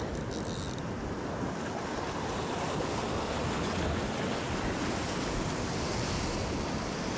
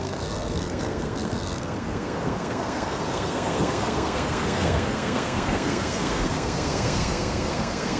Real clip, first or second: first